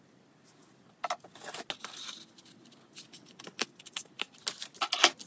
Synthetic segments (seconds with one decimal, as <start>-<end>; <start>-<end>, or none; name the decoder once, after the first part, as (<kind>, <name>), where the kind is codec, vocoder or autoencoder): none